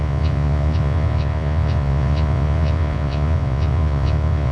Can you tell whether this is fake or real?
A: fake